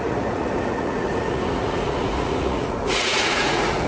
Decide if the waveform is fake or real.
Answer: fake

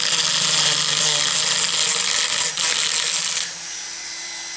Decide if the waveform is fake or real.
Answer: fake